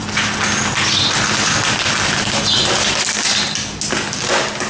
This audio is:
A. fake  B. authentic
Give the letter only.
B